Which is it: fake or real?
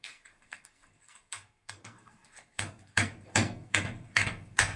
fake